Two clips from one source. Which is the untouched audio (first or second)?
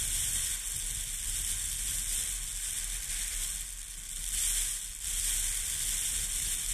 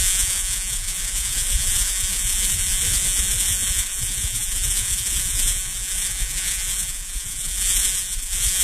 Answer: first